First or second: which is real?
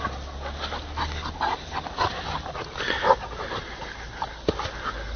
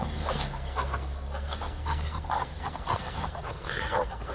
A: first